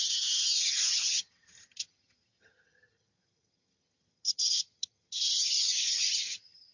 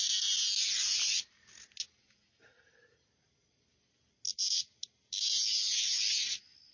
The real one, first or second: second